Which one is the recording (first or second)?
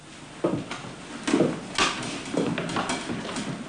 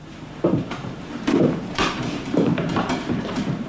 first